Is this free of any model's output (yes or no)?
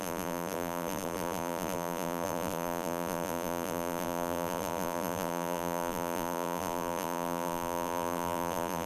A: no